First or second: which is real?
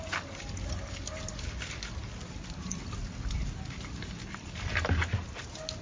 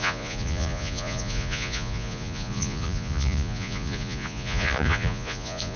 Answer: first